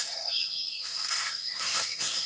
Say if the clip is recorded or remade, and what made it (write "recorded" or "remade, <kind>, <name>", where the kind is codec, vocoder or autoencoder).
remade, codec, SNAC